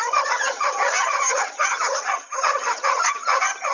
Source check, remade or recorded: remade